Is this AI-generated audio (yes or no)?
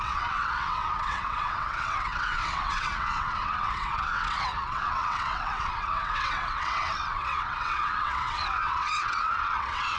yes